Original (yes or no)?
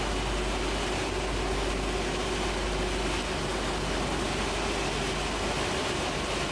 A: yes